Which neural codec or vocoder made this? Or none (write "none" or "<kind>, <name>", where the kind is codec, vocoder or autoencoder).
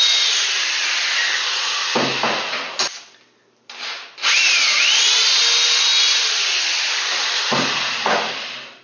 none